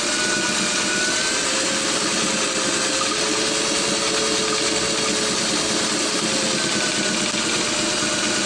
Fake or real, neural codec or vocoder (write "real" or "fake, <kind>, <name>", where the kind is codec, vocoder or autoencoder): real